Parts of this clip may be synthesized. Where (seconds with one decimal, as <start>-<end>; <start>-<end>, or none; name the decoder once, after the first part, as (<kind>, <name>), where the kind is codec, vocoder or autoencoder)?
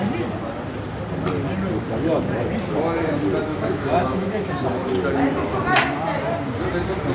3.5-4.9 (autoencoder, DAC-VAE)